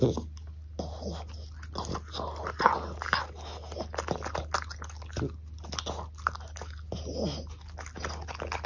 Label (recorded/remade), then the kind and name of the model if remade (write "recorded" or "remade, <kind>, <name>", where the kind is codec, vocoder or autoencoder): recorded